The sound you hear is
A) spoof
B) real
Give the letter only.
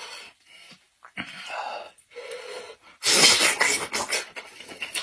B